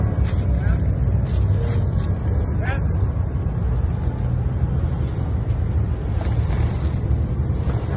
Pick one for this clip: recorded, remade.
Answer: recorded